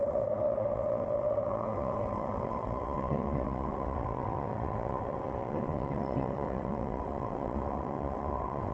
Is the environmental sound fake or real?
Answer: fake